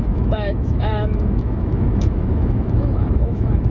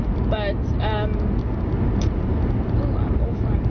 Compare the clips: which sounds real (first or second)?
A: second